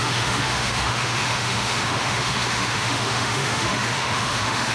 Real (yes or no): no